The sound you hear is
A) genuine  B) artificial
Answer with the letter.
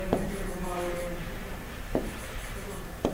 B